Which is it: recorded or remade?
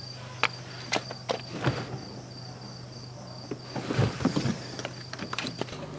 recorded